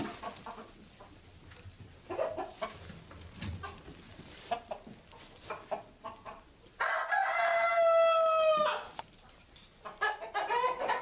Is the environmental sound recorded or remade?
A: recorded